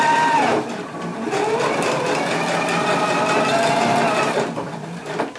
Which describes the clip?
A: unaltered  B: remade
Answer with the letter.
A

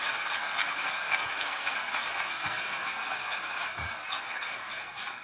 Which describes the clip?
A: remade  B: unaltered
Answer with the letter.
A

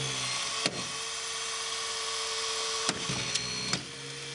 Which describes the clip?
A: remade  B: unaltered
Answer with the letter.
B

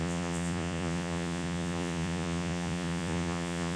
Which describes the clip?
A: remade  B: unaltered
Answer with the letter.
A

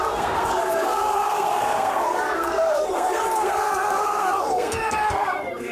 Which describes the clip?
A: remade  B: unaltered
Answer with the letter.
A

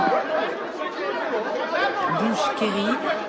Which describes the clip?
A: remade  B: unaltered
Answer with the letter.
B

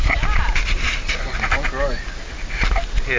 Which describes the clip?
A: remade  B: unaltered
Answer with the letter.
B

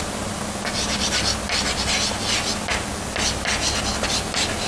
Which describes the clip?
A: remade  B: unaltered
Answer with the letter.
B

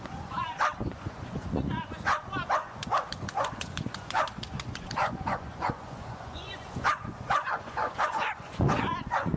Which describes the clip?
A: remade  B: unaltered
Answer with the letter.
A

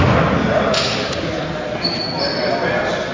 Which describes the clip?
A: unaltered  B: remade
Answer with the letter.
A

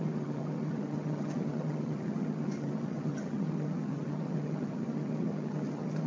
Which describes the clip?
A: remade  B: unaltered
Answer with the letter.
A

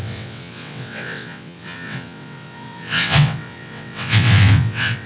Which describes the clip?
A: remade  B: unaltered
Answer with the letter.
A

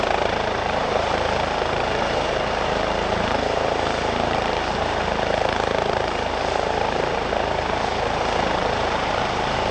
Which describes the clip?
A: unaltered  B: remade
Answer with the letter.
B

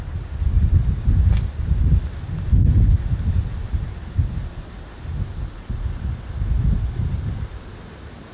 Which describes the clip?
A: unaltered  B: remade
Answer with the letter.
A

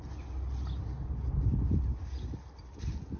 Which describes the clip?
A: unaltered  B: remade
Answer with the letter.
A